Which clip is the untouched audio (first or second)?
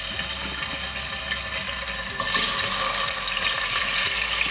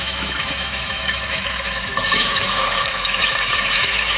first